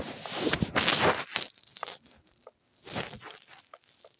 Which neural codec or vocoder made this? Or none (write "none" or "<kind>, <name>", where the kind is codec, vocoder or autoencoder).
none